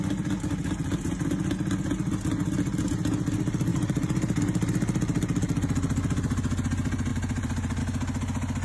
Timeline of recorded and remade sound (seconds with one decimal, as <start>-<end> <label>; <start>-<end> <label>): 0.0-3.7 recorded; 3.7-4.4 remade; 4.4-7.1 recorded; 7.1-7.8 remade; 7.8-8.6 recorded